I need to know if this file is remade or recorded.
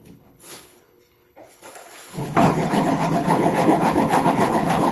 remade